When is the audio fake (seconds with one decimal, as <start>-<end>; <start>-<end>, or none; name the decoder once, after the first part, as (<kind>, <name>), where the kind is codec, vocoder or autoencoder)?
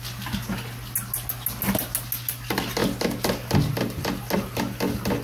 none